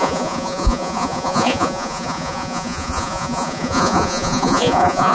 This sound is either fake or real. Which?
fake